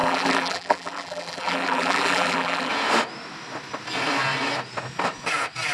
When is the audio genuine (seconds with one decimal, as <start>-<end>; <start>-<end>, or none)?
2.7-5.7